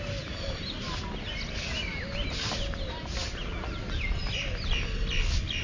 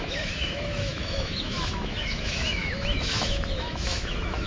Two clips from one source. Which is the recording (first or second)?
first